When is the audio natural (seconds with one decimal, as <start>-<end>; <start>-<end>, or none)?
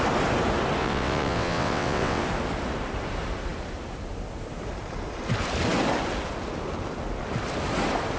0.0-0.8; 2.2-8.2